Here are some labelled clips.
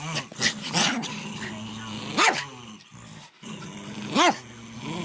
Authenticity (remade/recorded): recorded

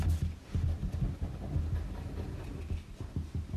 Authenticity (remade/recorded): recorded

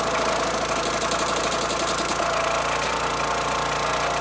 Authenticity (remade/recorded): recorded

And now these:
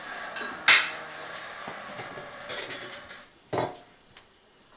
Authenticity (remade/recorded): recorded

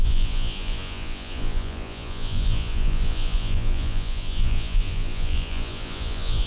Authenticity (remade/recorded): remade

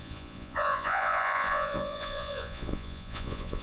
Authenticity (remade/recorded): remade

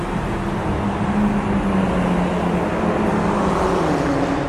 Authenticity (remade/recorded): recorded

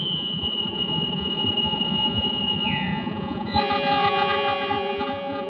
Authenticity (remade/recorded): remade